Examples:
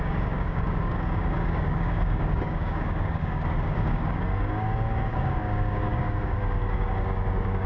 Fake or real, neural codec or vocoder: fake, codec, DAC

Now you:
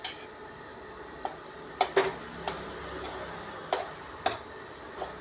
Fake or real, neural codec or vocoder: real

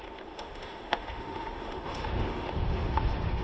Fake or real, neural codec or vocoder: fake, autoencoder, DAC-VAE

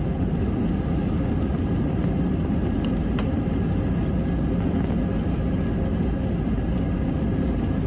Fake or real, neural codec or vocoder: real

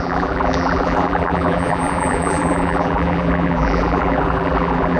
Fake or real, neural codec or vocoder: fake, vocoder, BigVGAN v2